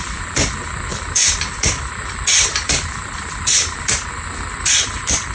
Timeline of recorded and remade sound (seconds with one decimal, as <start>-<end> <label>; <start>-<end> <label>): 0.0-0.9 recorded; 0.9-4.1 remade; 4.1-5.3 recorded